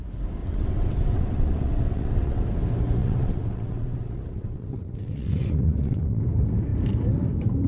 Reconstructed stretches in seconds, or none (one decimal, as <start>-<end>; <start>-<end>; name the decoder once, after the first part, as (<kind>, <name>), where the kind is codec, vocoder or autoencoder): 0.4-2.4 (vocoder, WaveNeXt); 3.0-6.2